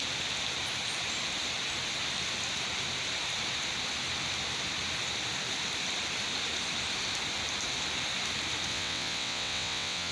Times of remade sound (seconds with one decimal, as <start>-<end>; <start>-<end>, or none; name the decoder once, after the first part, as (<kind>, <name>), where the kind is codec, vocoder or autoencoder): 8.7-10.1 (vocoder, WaveNeXt)